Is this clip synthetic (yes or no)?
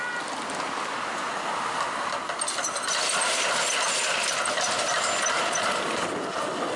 no